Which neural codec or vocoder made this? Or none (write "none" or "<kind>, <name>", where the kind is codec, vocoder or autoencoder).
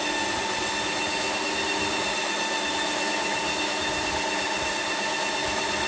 none